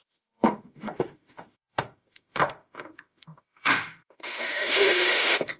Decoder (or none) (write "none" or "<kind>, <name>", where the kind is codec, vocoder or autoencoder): autoencoder, DAC-VAE